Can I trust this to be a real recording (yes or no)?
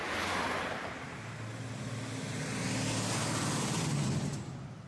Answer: yes